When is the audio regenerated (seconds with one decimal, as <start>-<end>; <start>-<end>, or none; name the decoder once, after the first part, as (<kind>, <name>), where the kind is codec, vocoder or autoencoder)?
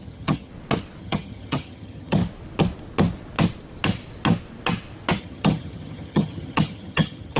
0.0-0.5 (vocoder, HiFi-GAN); 1.0-2.2; 5.2-7.4